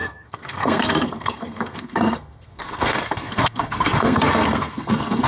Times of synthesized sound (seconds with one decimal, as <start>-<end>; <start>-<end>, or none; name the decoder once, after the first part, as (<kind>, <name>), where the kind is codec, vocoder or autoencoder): 0.0-5.3 (codec, SNAC)